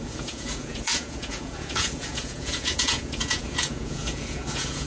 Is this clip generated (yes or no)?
yes